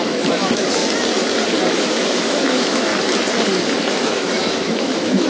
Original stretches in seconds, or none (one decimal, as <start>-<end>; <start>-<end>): 0.8-1.7; 2.9-3.9